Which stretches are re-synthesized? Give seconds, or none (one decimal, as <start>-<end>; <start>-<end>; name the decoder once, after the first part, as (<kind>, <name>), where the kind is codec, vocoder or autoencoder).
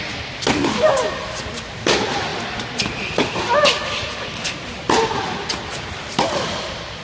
none